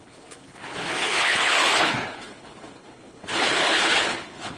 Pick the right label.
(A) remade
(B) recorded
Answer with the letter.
A